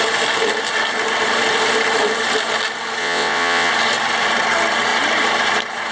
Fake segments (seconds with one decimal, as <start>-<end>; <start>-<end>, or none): 3.0-3.7